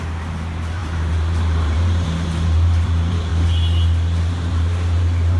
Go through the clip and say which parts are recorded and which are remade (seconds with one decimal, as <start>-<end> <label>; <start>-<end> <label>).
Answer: 0.0-3.3 remade; 3.3-4.3 recorded; 4.3-5.4 remade